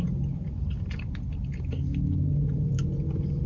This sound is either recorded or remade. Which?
recorded